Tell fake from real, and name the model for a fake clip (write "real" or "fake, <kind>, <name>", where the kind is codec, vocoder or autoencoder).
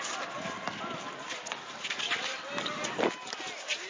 real